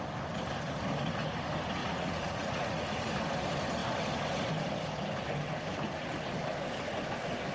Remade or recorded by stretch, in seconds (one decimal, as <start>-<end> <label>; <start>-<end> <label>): 0.0-1.8 recorded; 1.8-3.1 remade; 3.1-7.5 recorded

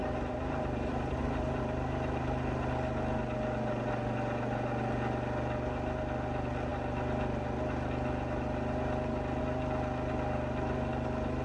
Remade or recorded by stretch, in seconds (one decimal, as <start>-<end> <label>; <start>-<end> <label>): 0.0-1.6 remade; 1.6-11.4 recorded

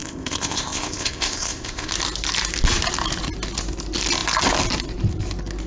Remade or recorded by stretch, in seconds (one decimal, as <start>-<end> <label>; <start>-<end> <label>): 0.0-1.9 remade; 1.9-5.7 recorded

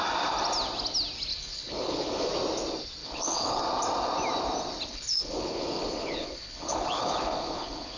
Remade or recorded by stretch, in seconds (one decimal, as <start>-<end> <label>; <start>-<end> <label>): 0.0-1.3 recorded; 1.3-2.3 remade; 2.3-3.0 recorded; 3.0-3.6 remade; 3.6-4.9 recorded; 4.9-8.0 remade

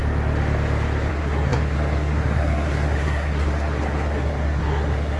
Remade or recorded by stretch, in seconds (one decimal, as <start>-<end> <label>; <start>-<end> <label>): 0.0-1.1 recorded; 1.1-5.2 remade